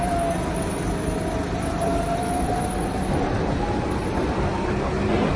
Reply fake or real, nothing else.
real